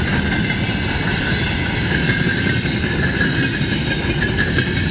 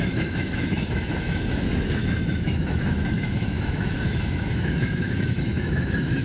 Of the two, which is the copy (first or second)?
second